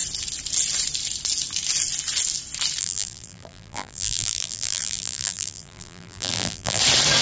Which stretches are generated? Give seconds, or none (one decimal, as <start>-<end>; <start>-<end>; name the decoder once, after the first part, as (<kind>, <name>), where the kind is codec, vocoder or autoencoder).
2.8-6.8 (vocoder, BigVGAN v2)